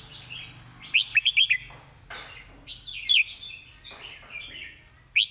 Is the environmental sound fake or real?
real